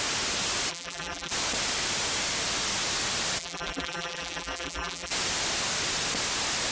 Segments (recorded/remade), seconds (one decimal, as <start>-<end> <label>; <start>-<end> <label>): 0.0-0.7 recorded; 0.7-1.3 remade; 1.3-3.4 recorded; 3.4-5.1 remade; 5.1-6.7 recorded